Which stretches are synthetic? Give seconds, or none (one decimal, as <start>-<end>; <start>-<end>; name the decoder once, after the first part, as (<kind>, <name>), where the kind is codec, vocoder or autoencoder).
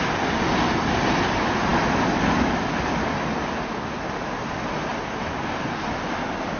none